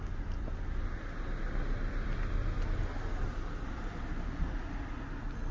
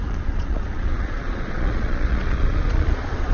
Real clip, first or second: first